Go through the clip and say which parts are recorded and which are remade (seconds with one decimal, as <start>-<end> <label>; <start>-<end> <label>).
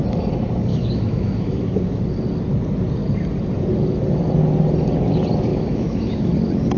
0.0-0.7 recorded; 0.7-2.0 remade; 2.0-5.5 recorded; 5.5-6.3 remade; 6.3-6.8 recorded